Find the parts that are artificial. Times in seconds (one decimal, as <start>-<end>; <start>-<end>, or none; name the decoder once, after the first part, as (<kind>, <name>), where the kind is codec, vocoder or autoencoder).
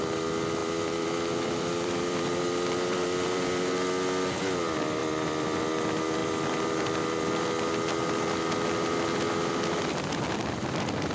0.6-3.7 (vocoder, BigVGAN v2); 5.0-5.6; 6.2-7.3